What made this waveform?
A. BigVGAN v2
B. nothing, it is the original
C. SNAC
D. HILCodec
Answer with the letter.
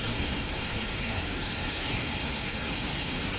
C